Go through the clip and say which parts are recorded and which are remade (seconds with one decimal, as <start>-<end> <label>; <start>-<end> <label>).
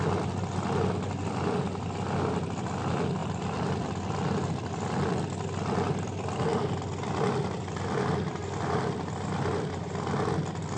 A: 0.0-3.2 recorded; 3.2-3.9 remade; 3.9-10.8 recorded